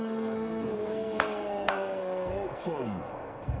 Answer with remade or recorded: remade